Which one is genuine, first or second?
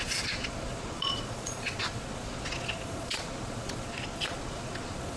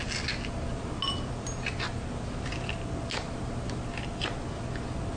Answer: second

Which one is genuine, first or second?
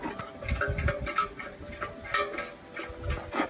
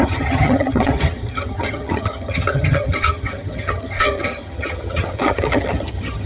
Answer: first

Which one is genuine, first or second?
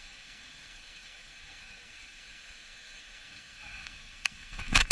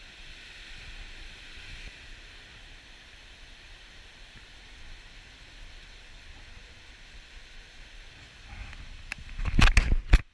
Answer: second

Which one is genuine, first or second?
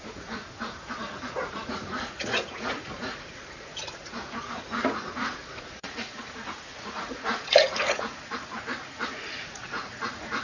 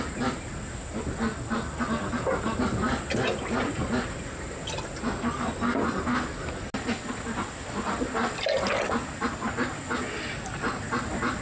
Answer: second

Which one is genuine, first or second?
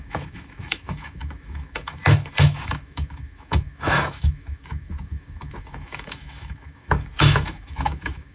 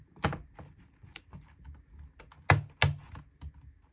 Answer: second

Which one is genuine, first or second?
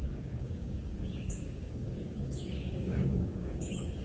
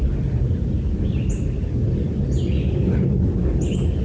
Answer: second